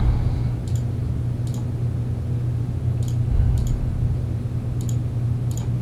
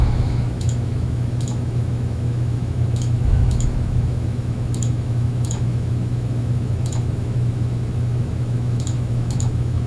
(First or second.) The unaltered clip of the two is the first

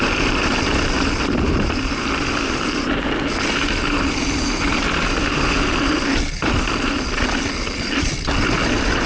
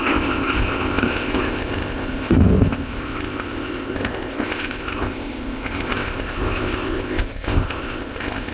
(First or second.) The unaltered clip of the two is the first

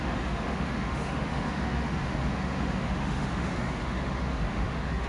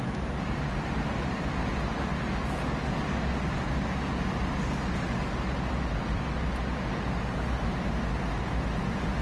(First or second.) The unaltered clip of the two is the second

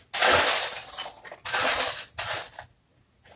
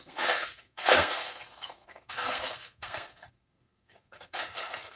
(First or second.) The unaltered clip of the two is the first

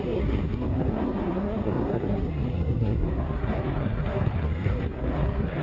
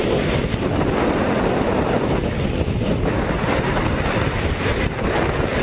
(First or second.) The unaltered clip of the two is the second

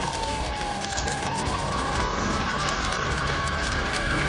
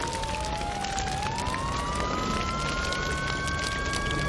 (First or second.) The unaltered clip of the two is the second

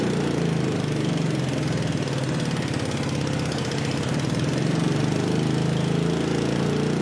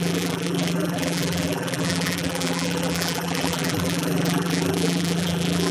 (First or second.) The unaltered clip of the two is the first